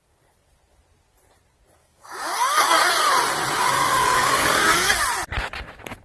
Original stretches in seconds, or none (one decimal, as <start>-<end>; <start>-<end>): 0.0-1.8; 2.9-3.6; 4.9-6.0